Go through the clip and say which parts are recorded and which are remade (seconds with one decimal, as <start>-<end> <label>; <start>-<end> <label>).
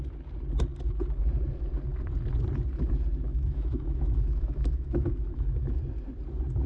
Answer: 0.0-3.3 recorded; 3.3-5.8 remade; 5.8-6.7 recorded